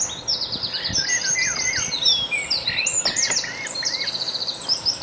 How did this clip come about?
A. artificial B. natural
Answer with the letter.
B